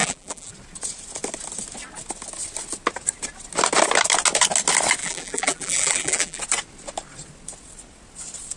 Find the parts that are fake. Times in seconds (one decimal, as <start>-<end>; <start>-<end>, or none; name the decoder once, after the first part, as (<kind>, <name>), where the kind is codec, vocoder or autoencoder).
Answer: 0.0-0.5 (vocoder, BigVGAN v2); 5.0-6.4